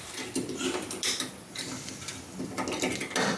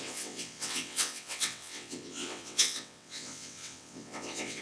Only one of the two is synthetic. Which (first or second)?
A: second